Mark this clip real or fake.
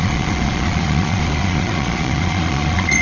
fake